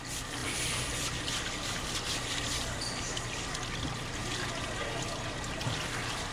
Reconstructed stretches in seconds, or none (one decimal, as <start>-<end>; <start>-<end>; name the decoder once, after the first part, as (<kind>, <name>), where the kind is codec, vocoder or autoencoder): none